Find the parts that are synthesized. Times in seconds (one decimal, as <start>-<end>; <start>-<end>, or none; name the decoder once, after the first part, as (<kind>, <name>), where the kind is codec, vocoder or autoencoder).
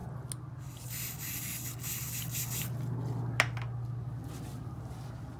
none